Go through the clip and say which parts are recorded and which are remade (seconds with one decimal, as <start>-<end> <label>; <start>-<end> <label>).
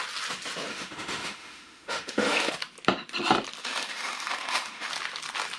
0.0-0.7 recorded; 0.7-2.5 remade; 2.5-3.6 recorded; 3.6-4.9 remade; 4.9-5.6 recorded